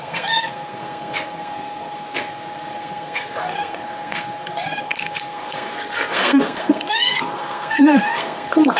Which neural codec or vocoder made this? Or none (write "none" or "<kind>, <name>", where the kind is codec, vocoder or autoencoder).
codec, SNAC